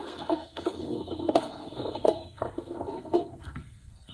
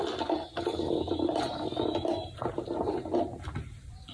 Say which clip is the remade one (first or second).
first